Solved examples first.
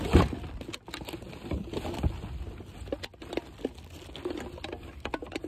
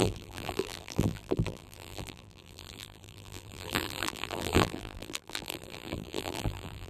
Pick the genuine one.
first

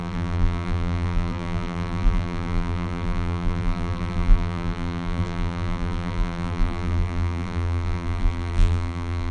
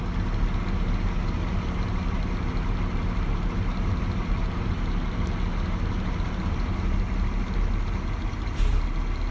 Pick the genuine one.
second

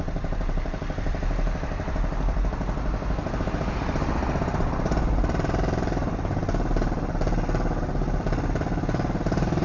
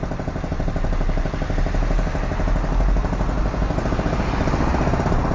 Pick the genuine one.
second